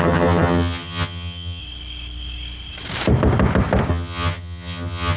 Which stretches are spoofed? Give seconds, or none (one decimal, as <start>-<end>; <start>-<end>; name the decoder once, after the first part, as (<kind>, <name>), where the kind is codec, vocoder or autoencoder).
0.0-1.6 (vocoder, HiFi-GAN); 3.9-5.2